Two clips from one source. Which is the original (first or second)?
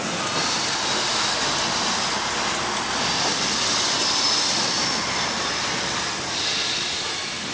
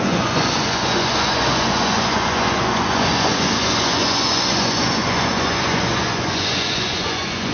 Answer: first